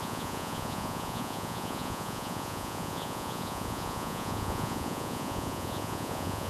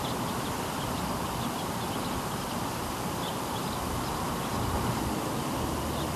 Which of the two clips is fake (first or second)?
first